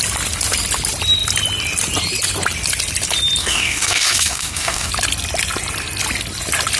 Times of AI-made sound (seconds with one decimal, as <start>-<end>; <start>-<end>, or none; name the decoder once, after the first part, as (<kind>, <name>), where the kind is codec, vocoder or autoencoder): 3.4-4.9 (codec, DAC)